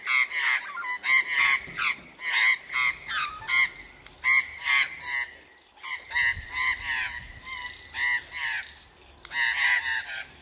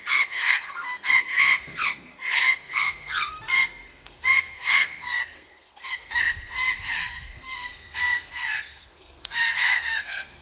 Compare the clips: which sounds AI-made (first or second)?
second